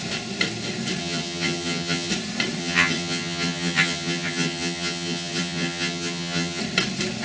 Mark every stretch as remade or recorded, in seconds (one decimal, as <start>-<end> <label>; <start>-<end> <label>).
0.0-1.0 recorded; 1.0-2.1 remade; 2.1-2.6 recorded; 2.6-6.6 remade; 6.6-7.2 recorded